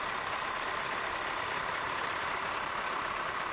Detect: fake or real fake